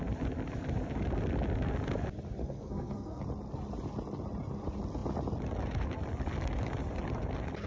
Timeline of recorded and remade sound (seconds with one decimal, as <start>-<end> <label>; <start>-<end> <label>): 0.0-2.4 recorded; 2.4-3.2 remade; 3.2-7.7 recorded